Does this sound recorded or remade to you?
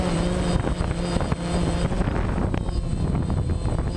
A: recorded